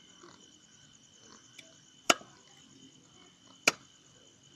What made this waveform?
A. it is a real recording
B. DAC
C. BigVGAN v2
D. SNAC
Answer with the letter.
A